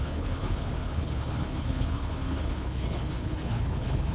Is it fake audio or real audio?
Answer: fake